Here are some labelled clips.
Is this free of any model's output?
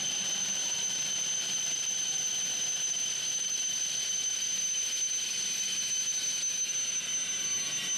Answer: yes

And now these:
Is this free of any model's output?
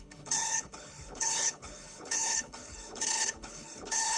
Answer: no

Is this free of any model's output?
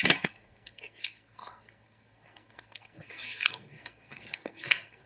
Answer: no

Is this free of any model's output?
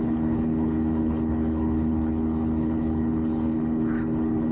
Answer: no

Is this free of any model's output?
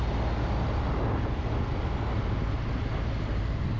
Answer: yes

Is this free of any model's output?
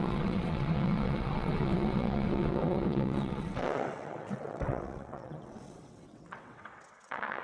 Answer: no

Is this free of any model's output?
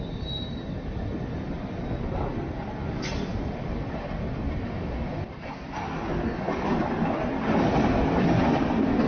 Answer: yes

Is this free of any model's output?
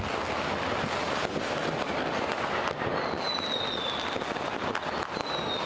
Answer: yes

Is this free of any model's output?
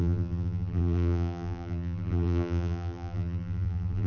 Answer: no